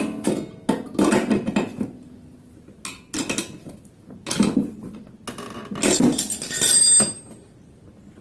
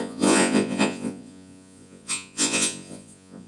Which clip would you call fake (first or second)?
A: second